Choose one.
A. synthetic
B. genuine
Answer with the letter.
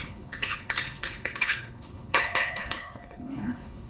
A